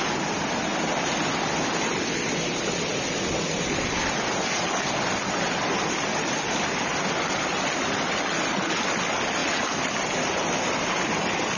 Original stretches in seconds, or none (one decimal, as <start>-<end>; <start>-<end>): 0.0-11.6